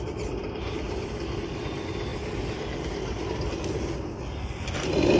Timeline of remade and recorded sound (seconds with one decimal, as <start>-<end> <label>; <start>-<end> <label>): 0.0-0.4 recorded; 0.4-1.6 remade; 1.6-5.2 recorded